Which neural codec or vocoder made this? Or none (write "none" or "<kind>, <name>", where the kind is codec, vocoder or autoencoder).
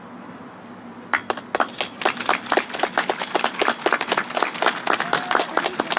none